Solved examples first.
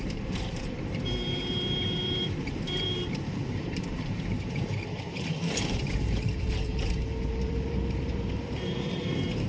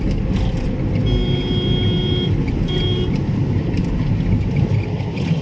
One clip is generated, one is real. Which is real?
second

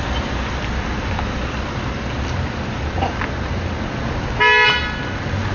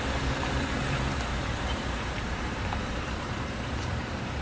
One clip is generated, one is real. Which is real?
first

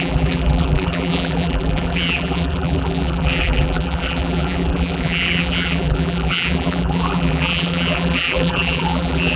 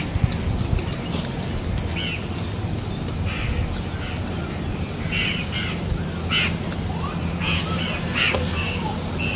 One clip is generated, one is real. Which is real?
second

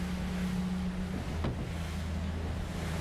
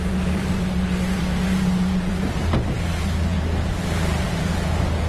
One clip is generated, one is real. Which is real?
first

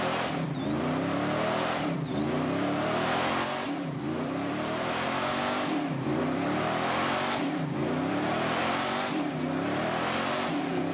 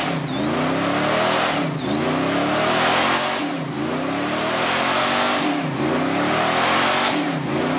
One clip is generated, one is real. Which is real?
second